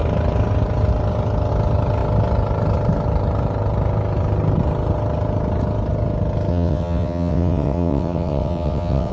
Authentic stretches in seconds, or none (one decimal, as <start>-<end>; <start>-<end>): 0.0-6.5